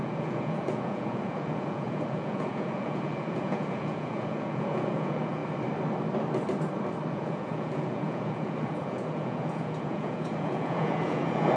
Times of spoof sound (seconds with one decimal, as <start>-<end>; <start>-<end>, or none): 0.0-5.4; 7.1-11.6